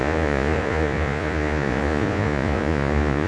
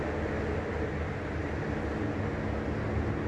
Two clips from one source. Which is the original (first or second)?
second